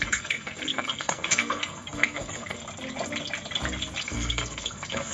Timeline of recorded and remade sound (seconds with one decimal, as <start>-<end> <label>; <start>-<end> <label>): 0.0-2.6 remade; 2.6-4.0 recorded; 4.0-5.1 remade